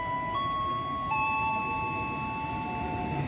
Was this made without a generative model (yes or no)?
yes